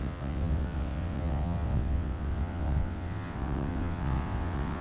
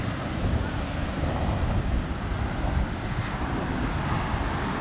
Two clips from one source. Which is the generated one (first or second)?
first